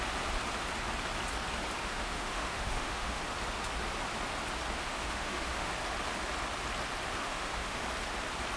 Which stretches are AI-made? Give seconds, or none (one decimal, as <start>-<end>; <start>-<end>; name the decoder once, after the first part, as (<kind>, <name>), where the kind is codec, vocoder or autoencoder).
1.8-3.2 (autoencoder, DAC-VAE); 4.8-5.7; 7.2-7.8